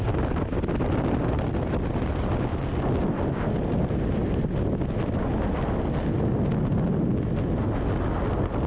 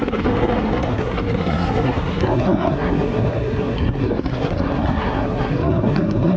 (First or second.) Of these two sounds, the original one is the first